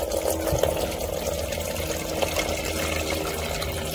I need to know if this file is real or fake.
real